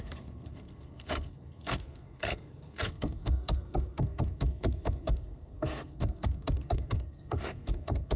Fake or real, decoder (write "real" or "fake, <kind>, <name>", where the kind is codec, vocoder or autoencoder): fake, codec, SNAC